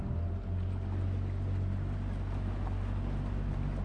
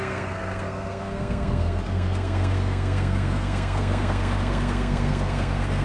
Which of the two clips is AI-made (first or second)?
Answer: second